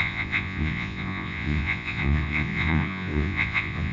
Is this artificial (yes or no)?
yes